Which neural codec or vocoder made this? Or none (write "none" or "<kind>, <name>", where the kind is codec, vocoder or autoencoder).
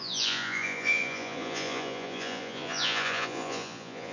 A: vocoder, Vocos